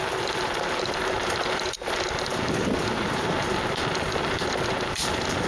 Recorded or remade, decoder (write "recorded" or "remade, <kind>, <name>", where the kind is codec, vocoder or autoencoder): remade, vocoder, BigVGAN v2